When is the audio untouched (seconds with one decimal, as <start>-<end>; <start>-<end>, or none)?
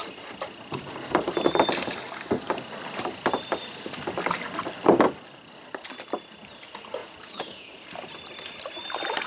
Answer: 0.0-7.0; 7.7-9.3